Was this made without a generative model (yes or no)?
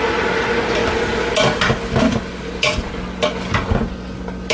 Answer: yes